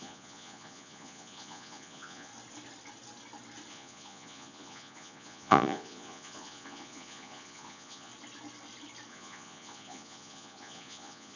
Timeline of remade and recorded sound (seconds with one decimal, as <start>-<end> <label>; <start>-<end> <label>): 0.0-2.3 remade; 2.3-3.7 recorded; 3.7-8.1 remade; 8.1-9.1 recorded; 9.1-11.4 remade